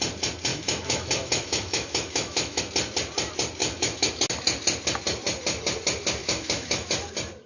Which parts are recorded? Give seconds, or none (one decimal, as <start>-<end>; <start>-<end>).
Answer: 0.0-0.5; 2.6-3.6; 4.1-6.2; 6.9-7.5